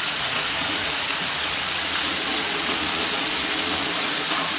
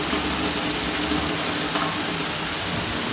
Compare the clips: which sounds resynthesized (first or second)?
first